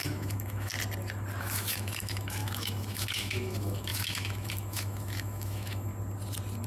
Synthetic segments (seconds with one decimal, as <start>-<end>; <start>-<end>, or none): 0.0-0.7; 1.4-5.9